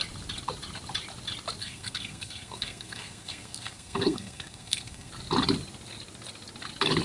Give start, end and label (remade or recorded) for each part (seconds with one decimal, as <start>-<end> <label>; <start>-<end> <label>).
0.0-1.6 recorded; 1.6-5.1 remade; 5.1-7.0 recorded